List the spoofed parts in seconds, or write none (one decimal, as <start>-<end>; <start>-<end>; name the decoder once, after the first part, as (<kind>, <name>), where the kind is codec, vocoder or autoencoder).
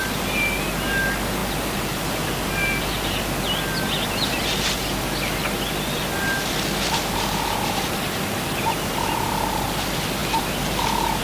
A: none